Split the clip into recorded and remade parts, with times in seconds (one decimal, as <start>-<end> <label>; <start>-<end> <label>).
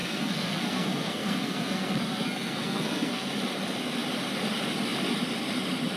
0.0-3.3 remade; 3.3-6.0 recorded